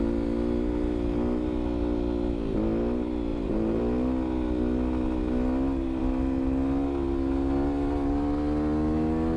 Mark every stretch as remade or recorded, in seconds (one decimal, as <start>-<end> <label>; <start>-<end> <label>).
0.0-3.3 recorded; 3.3-3.8 remade; 3.8-9.4 recorded